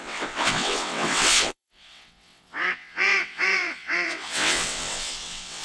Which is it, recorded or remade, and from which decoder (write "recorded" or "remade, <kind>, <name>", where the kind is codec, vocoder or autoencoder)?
remade, vocoder, WaveNeXt